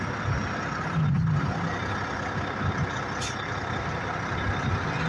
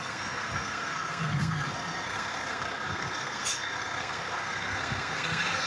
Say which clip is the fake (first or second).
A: second